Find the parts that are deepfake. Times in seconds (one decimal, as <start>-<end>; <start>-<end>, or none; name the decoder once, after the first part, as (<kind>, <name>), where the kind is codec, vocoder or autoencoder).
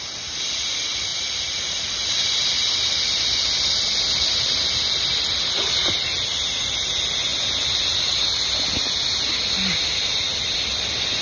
none